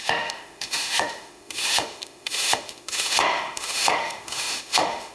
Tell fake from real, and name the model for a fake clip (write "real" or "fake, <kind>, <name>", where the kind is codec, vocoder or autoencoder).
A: fake, autoencoder, DAC-VAE